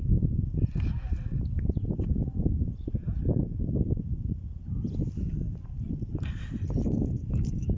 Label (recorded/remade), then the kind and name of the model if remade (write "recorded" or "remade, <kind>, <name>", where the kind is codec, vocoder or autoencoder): recorded